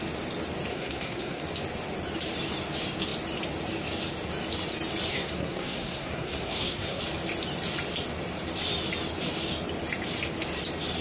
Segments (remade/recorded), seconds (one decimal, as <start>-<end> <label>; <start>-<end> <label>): 0.0-0.7 recorded; 0.7-1.4 remade; 1.4-5.1 recorded; 5.1-7.0 remade; 7.0-11.0 recorded